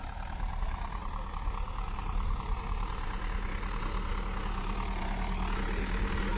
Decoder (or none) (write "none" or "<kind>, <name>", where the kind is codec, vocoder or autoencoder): none